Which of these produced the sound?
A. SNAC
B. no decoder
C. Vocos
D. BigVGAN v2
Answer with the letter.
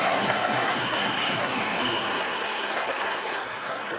A